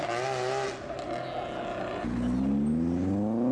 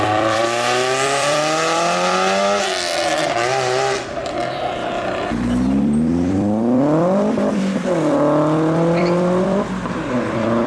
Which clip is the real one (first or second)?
first